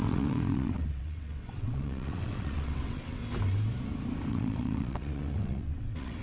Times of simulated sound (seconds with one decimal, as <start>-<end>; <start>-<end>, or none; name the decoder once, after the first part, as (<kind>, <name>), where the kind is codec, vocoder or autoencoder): 0.0-3.2 (vocoder, WaveNeXt); 4.3-6.2